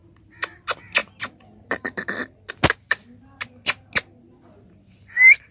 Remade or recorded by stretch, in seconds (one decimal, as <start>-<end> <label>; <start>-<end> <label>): 0.0-0.6 remade; 0.6-5.5 recorded